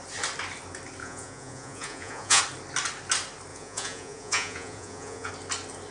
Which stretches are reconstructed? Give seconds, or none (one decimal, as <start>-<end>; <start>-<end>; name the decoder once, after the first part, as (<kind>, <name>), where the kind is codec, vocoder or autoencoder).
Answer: 1.0-2.4 (vocoder, Vocos); 3.5-5.3